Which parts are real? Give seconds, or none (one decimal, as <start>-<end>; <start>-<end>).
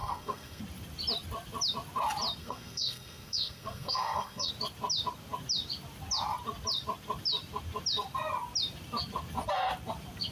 0.6-2.4; 4.5-10.3